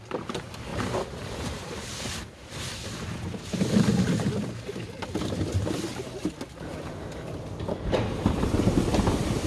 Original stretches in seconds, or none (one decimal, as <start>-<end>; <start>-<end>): 0.0-0.7; 4.3-9.5